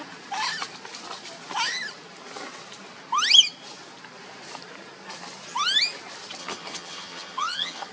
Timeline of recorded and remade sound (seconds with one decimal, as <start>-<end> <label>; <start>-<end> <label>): 0.0-6.4 recorded; 6.4-7.9 remade